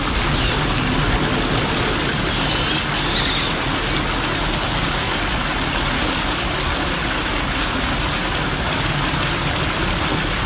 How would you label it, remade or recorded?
recorded